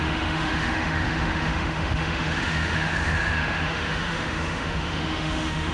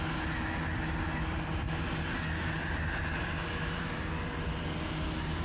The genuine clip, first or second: second